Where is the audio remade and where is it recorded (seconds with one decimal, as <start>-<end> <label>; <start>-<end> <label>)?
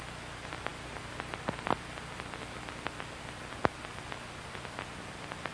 0.0-5.5 recorded